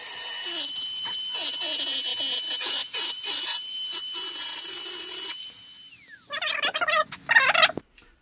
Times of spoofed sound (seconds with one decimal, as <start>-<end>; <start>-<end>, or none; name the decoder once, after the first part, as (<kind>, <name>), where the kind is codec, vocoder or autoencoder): none